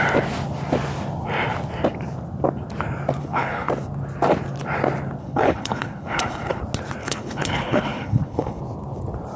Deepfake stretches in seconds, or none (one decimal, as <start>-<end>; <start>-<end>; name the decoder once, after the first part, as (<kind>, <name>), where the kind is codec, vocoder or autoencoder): 3.2-3.7 (codec, HILCodec); 5.2-6.6; 7.0-8.6